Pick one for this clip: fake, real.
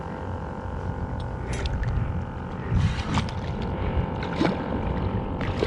real